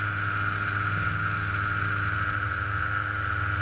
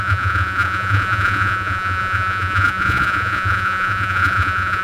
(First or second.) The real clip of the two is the first